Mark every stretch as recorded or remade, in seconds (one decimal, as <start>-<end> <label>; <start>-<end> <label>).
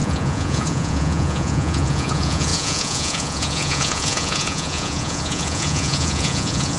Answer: 0.0-6.8 remade